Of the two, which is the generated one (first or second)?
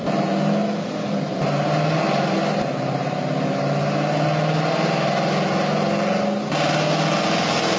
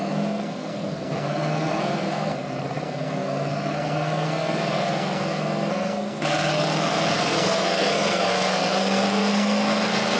second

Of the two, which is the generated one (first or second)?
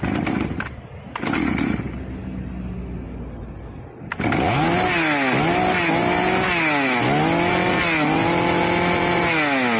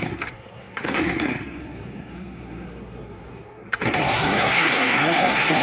second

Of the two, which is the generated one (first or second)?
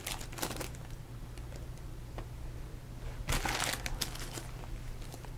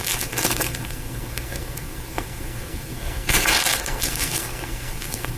second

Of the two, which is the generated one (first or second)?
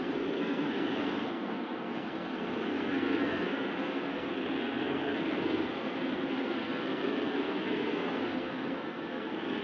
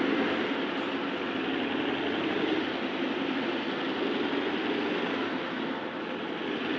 first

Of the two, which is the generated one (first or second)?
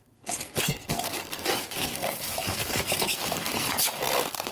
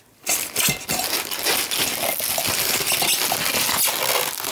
first